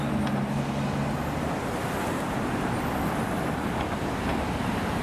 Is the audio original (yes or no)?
yes